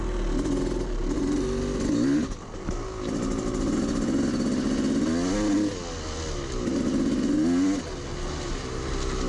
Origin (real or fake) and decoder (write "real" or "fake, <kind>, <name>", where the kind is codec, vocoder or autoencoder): real